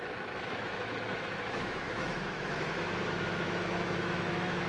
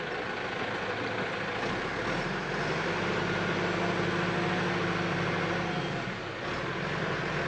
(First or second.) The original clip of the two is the second